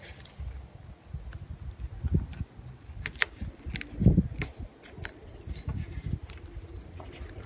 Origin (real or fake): real